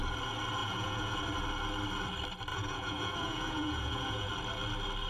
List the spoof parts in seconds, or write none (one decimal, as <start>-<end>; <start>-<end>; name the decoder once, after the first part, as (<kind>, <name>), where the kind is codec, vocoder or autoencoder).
0.6-1.2 (vocoder, Vocos); 2.5-4.3